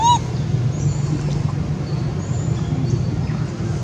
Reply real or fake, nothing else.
real